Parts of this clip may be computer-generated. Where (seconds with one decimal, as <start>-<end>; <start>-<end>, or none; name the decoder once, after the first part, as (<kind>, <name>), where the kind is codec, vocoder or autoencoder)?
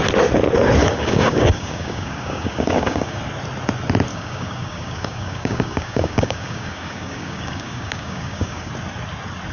0.8-3.2 (codec, DAC); 4.1-8.7